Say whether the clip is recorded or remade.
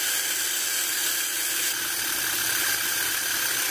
recorded